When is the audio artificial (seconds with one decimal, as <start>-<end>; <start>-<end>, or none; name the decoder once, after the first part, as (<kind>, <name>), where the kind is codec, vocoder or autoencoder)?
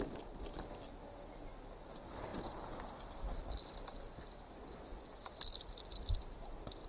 4.6-5.4 (vocoder, Vocos)